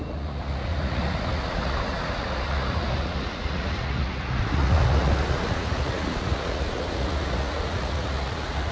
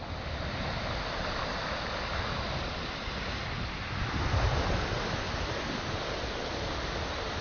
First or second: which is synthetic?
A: first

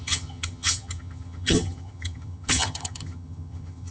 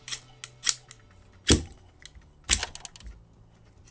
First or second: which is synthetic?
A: first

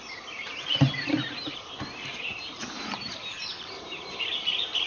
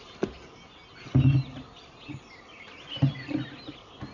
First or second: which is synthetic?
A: first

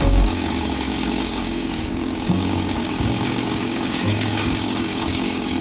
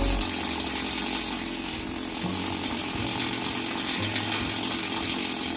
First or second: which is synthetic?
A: first